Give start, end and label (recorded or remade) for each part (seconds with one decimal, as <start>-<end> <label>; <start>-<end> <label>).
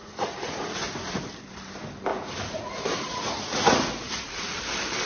0.0-1.2 remade; 1.2-2.1 recorded; 2.1-4.6 remade; 4.6-5.1 recorded